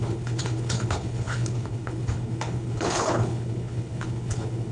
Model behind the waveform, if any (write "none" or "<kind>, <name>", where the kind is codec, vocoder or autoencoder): codec, HILCodec